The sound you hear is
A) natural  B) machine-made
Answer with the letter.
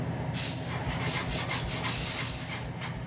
A